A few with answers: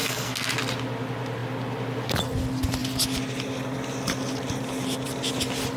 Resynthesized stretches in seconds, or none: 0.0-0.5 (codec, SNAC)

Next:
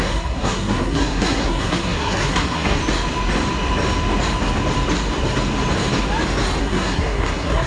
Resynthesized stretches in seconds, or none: 0.0-2.8 (codec, SNAC); 6.6-7.7

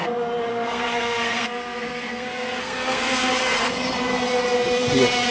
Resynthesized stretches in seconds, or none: 0.5-3.3 (codec, SNAC)

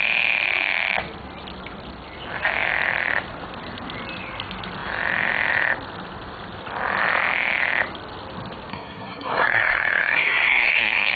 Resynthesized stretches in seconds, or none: 8.7-11.2 (codec, SNAC)

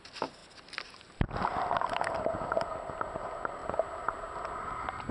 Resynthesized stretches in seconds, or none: none

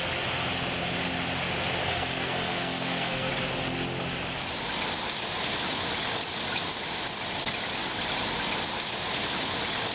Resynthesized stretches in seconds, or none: 1.8-3.3 (codec, SNAC)

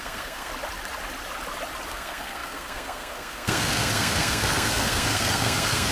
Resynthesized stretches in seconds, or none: 0.0-0.5 (codec, SNAC); 1.9-5.9